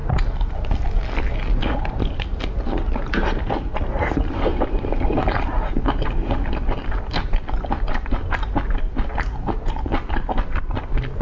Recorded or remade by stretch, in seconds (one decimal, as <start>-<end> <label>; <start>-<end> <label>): 0.0-11.2 recorded